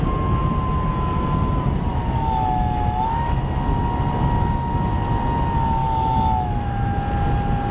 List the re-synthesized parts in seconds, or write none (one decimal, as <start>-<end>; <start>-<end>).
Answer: 1.9-3.4; 5.8-7.0